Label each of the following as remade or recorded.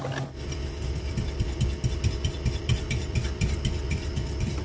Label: recorded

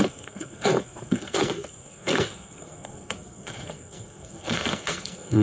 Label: remade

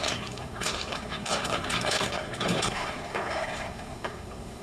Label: remade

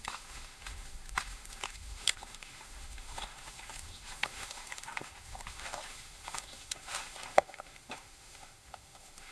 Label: remade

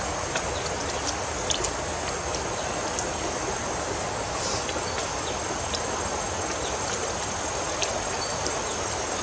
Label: recorded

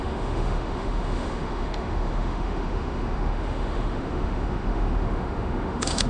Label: remade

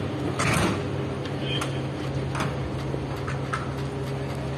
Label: recorded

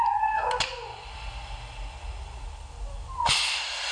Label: recorded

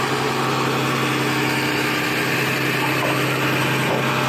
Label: recorded